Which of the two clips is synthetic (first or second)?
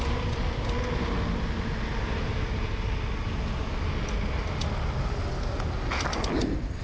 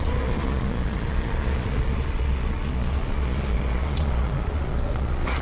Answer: second